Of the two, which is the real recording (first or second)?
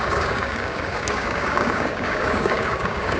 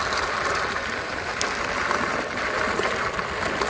second